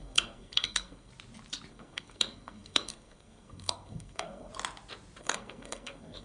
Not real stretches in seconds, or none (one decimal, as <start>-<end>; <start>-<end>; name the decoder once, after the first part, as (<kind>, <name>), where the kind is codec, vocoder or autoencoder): 0.0-1.1 (codec, SNAC); 1.7-4.5; 5.2-6.2